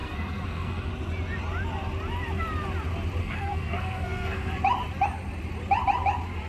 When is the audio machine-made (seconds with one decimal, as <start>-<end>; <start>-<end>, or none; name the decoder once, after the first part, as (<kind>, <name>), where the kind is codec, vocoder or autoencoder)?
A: 0.0-0.9 (codec, SNAC); 3.2-4.5